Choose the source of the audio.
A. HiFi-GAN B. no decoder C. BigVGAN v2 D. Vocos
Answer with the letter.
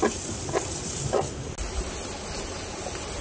B